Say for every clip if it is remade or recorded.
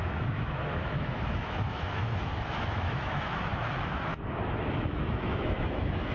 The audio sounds remade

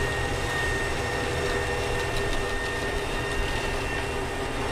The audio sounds recorded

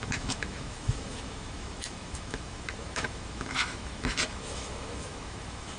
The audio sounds remade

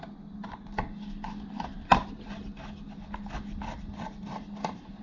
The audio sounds recorded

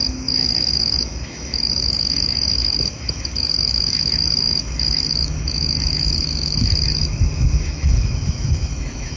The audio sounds remade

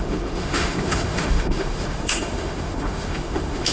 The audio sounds remade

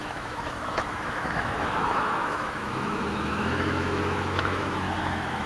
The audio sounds remade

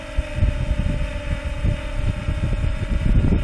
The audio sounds recorded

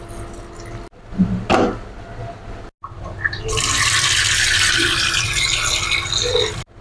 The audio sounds recorded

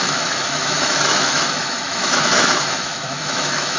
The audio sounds remade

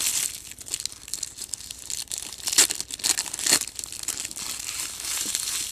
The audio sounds recorded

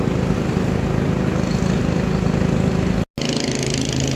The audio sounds recorded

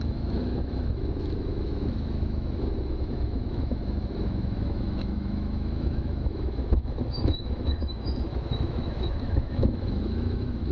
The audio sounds remade